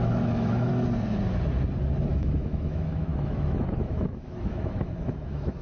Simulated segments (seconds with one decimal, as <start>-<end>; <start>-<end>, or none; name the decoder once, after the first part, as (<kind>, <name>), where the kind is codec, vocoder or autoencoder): 0.0-0.7 (autoencoder, DAC-VAE); 2.1-5.6